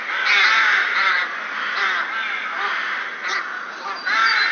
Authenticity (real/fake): real